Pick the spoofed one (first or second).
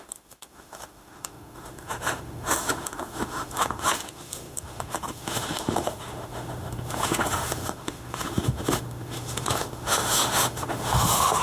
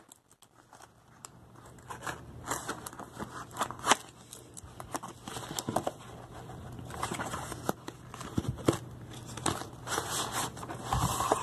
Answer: first